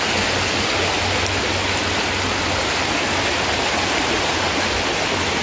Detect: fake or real real